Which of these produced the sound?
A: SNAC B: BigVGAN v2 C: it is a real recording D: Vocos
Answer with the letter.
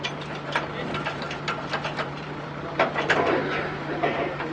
B